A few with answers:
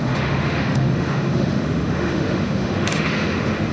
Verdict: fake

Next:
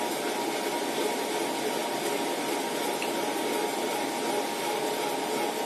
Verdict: real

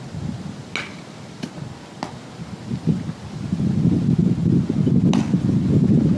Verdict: real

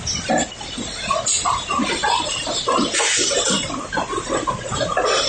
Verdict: real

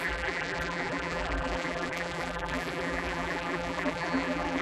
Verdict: fake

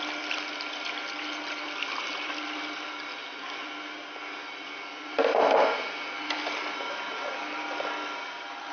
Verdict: real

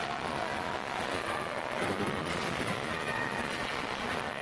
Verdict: fake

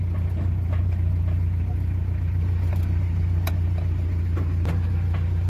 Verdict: real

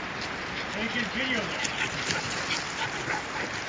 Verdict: real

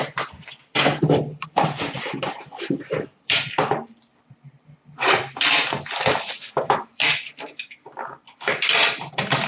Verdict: fake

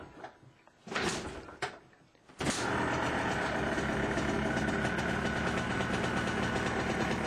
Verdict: real